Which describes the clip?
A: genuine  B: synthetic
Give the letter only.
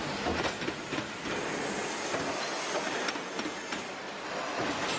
A